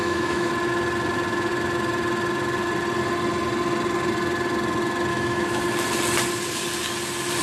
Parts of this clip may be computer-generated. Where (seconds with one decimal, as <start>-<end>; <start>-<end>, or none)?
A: 0.0-0.5; 5.1-5.6